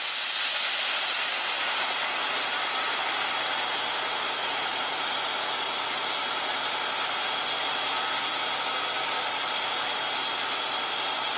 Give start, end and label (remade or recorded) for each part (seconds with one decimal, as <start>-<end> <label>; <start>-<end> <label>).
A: 0.0-4.4 recorded; 4.4-5.1 remade; 5.1-11.4 recorded